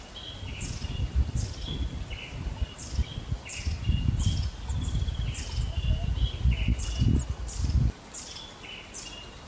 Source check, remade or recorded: recorded